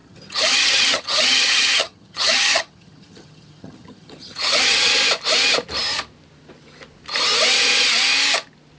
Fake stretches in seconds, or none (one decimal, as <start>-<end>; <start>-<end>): 0.0-4.9